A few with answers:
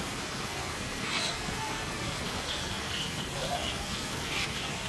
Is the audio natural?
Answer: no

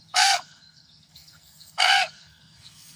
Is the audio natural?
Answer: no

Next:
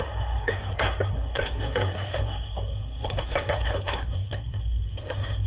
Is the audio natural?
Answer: no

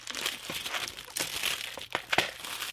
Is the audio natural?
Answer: yes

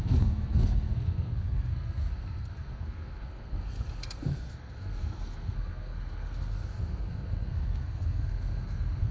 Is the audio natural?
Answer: no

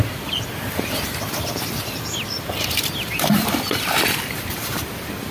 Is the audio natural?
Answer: yes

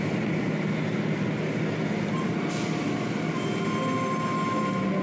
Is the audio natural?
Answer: yes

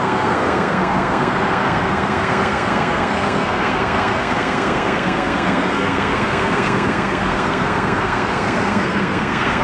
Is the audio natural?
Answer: no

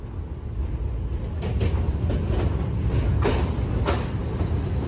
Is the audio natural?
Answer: yes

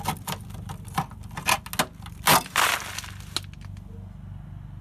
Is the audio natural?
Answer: yes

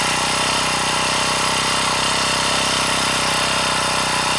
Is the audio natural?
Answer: yes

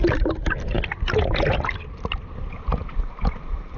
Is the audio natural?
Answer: yes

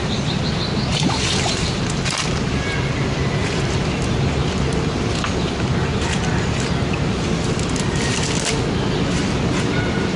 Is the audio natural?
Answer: yes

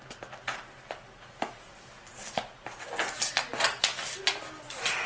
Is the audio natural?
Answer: yes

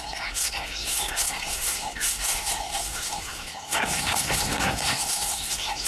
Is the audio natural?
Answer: no